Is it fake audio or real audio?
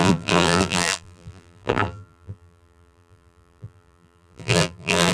fake